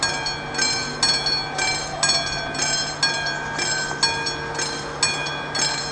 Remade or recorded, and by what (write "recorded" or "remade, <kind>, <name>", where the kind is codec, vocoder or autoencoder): recorded